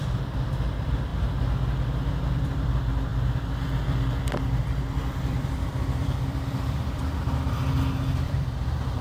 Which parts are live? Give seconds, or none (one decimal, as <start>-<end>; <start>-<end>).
1.1-2.3; 3.1-4.6; 7.0-8.1